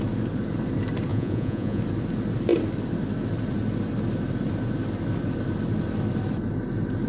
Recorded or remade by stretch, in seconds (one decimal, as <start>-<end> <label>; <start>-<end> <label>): 0.0-1.1 recorded; 1.1-1.8 remade; 1.8-7.1 recorded